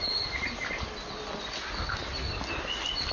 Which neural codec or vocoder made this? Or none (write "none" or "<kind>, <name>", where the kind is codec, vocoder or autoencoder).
none